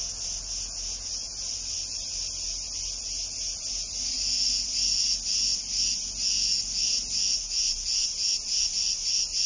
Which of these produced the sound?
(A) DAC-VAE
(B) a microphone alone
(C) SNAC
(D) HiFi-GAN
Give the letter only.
B